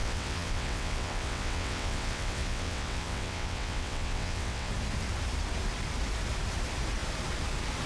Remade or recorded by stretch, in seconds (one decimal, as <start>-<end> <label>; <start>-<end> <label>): 0.0-4.7 remade; 4.7-7.9 recorded